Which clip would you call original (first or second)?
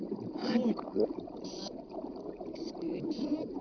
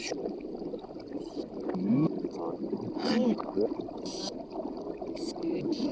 second